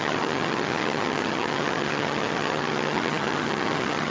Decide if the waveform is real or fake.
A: fake